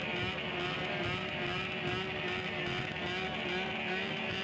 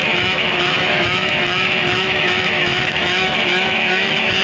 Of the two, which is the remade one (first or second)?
second